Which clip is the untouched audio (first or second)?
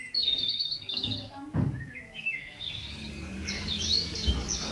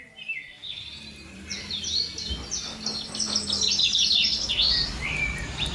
second